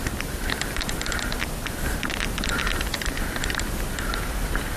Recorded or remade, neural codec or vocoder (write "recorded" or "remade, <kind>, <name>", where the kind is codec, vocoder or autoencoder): remade, vocoder, BigVGAN v2